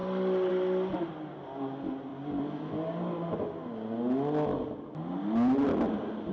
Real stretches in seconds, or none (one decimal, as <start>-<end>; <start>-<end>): 0.0-6.3